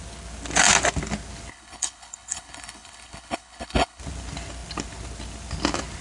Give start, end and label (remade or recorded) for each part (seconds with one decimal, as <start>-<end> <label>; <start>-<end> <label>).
0.0-1.5 recorded; 1.5-4.0 remade; 4.0-6.0 recorded